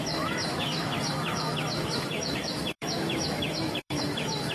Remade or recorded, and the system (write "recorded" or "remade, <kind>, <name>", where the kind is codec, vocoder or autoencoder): remade, autoencoder, DAC-VAE